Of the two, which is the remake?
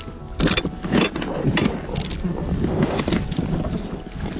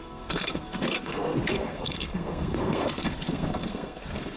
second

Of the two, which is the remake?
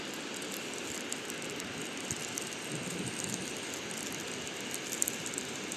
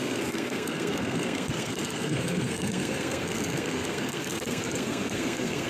second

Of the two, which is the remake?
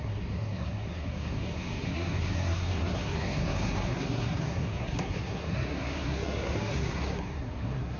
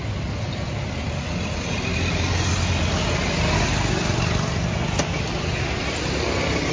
first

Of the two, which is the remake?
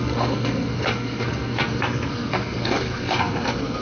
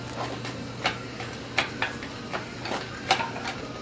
first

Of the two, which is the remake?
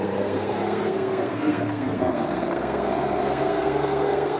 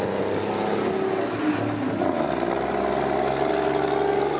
first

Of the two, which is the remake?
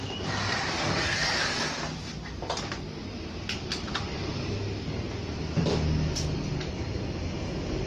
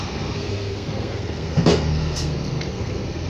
second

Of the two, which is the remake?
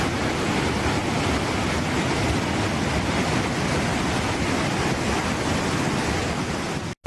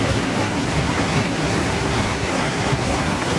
second